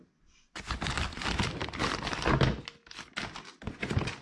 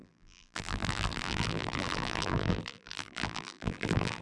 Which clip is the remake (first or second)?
second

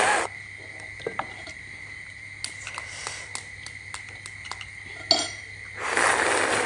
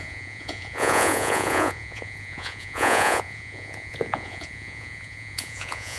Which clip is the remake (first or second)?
second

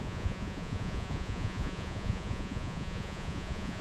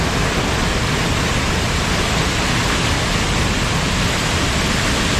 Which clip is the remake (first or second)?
first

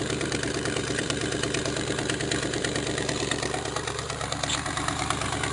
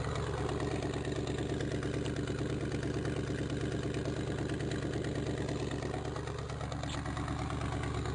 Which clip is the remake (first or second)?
first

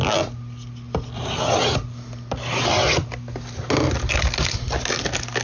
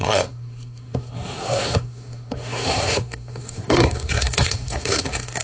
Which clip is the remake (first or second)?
second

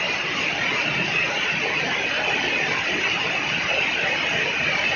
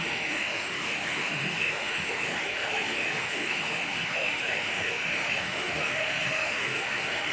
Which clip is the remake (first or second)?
second